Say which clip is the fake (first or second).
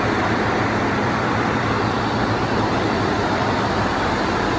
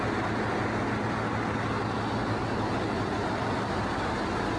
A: first